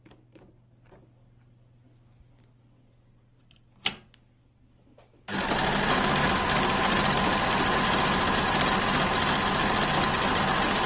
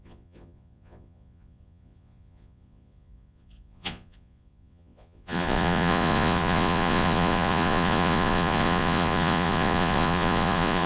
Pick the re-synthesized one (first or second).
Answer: second